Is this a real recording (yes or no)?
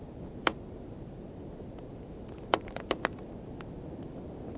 yes